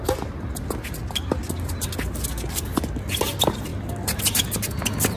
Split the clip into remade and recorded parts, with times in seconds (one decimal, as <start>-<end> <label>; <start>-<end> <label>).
0.0-5.2 recorded